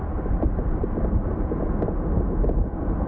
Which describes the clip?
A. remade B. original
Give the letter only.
B